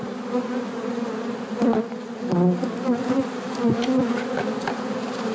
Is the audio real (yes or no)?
yes